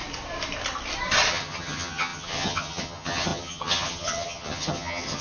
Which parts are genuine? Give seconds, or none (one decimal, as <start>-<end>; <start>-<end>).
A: 0.0-1.3